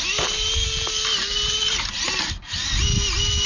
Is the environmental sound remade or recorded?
recorded